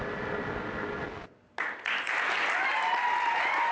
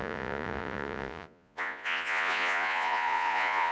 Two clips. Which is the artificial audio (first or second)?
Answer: second